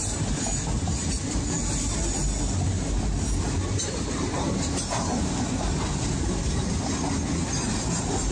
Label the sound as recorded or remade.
recorded